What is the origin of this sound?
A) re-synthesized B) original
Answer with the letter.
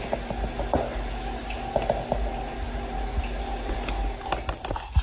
B